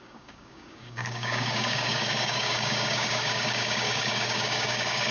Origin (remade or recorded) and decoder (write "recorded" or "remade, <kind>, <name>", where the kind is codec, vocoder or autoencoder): remade, codec, DAC